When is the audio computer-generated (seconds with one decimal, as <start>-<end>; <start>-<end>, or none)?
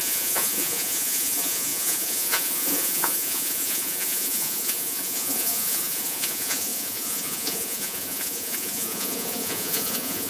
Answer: 0.0-10.3